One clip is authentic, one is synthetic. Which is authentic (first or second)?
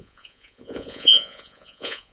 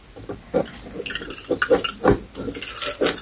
second